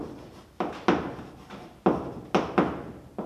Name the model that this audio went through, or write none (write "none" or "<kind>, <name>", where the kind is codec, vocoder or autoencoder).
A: none